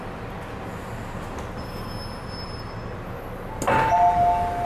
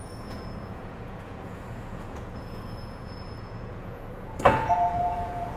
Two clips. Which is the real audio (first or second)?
first